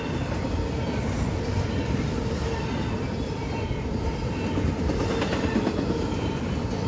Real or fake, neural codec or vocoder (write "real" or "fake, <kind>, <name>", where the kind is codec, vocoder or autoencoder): fake, vocoder, BigVGAN v2